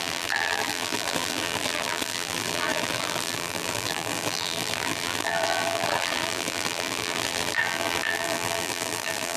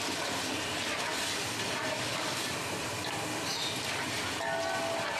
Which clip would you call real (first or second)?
second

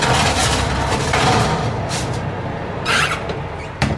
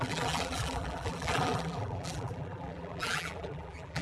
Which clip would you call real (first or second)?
first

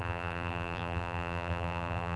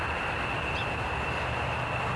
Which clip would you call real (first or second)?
second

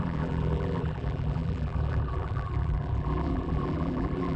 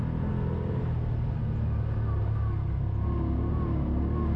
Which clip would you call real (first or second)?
second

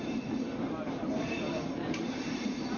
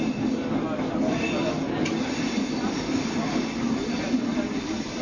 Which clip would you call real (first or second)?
second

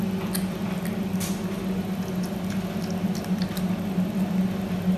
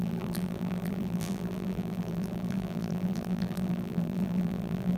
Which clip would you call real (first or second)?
first